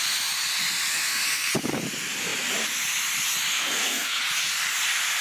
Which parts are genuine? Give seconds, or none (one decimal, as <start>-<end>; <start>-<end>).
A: 0.0-0.9; 1.5-3.5; 4.2-5.2